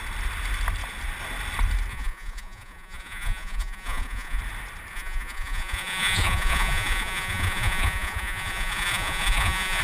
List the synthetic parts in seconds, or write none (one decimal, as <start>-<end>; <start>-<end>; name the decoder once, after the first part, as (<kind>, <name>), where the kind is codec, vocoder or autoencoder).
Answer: 1.9-4.4 (vocoder, Vocos); 4.9-9.8